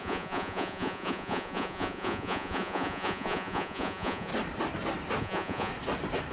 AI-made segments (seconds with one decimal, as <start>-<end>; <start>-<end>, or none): 0.0-4.3; 5.2-5.7